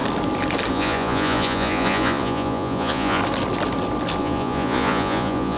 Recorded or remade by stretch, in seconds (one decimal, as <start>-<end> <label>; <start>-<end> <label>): 0.0-0.7 recorded; 0.7-3.2 remade; 3.2-4.2 recorded; 4.2-5.6 remade